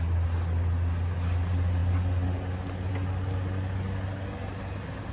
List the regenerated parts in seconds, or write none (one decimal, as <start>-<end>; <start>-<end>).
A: none